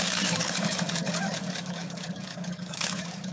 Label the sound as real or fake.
fake